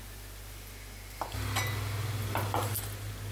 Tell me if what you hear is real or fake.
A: real